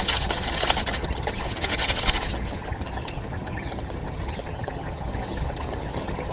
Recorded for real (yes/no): no